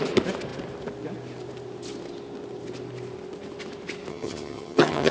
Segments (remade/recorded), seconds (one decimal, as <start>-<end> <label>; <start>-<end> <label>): 0.0-4.1 recorded; 4.1-5.1 remade